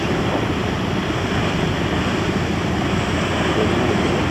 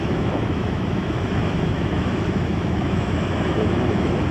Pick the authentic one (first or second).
first